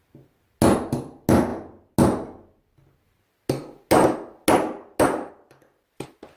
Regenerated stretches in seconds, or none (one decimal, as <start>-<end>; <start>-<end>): none